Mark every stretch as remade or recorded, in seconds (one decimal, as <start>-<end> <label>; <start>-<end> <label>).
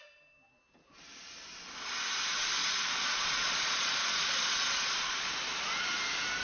0.0-2.6 recorded; 2.6-5.3 remade; 5.3-6.4 recorded